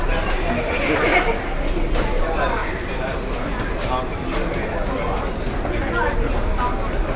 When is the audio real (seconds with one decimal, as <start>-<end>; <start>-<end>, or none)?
0.0-2.6; 3.3-7.2